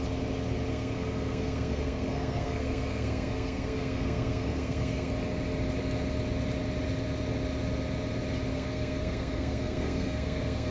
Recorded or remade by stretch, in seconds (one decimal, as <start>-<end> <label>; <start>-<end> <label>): 0.0-0.7 recorded; 0.7-5.1 remade; 5.1-8.5 recorded; 8.5-10.7 remade